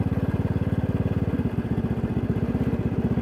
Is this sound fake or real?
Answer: real